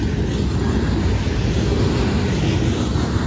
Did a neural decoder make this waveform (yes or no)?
no